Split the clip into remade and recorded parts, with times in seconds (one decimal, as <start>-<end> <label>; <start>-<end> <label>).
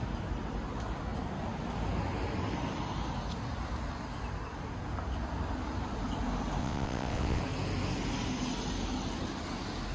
0.0-6.6 recorded; 6.6-7.4 remade; 7.4-9.9 recorded